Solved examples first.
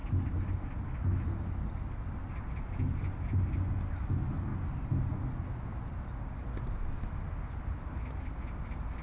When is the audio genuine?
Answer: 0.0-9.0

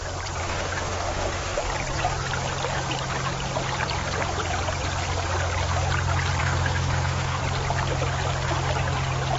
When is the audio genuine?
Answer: 0.0-0.4; 1.6-6.4; 7.4-9.4

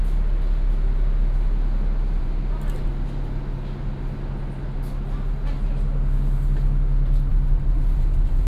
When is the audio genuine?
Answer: 0.0-2.2; 2.9-7.3

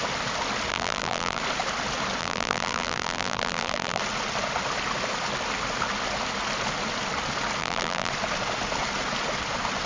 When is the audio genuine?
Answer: 0.0-0.7; 1.4-2.2; 4.0-7.6; 8.1-9.9

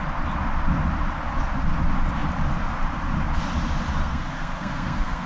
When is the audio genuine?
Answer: 0.0-4.0

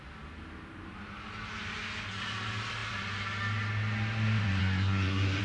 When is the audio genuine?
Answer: 0.0-4.6